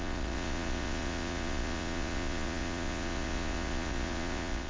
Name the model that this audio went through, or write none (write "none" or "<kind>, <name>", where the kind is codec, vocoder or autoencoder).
vocoder, Vocos